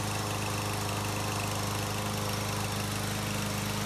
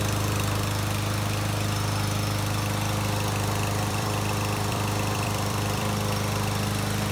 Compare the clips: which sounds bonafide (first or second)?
first